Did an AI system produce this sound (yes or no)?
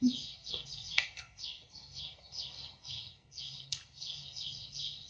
yes